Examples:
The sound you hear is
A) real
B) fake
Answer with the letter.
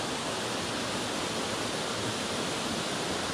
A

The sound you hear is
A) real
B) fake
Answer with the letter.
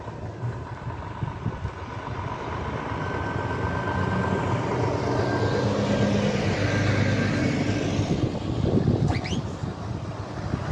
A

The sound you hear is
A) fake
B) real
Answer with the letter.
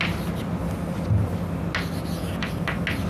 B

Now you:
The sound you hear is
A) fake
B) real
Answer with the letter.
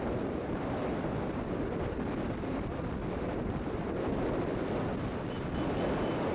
B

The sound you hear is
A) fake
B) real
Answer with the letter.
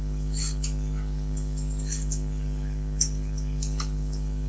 A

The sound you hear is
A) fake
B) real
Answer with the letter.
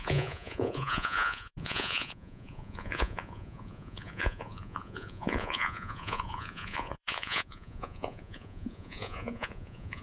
A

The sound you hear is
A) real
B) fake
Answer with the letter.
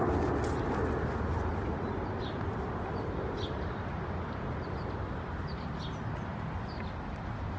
A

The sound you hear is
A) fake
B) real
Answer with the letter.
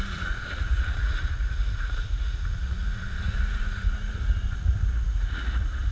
A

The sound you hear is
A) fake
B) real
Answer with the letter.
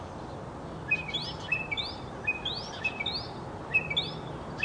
B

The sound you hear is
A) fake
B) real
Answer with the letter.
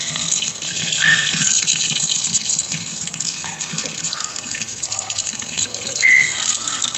A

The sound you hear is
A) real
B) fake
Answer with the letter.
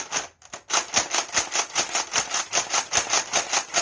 A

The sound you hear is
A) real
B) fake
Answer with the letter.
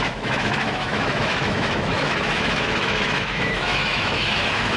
B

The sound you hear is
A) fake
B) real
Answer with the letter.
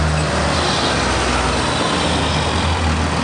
B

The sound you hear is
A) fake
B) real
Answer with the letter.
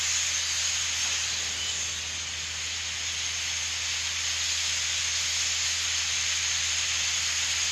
B